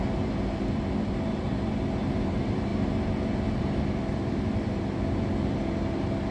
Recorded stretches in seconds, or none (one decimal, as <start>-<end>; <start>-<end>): 0.0-6.3